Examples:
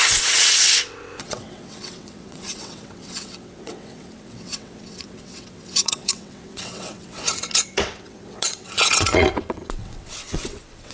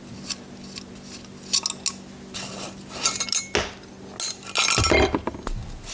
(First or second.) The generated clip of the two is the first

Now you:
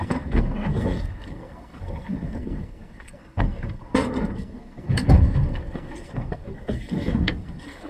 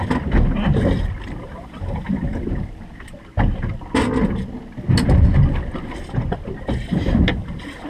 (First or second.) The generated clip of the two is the first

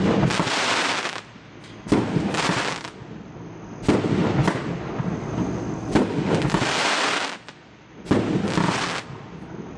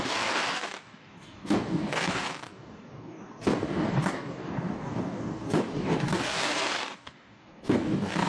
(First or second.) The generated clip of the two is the second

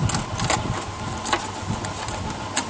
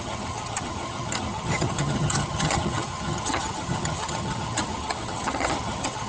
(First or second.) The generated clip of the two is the second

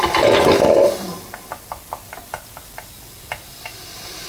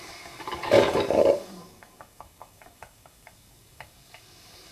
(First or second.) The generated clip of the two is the second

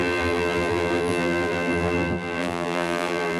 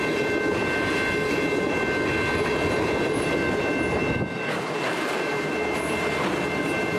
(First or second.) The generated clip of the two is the first